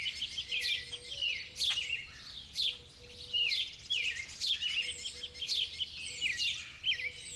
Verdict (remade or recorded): recorded